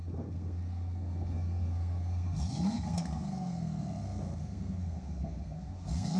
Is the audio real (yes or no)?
no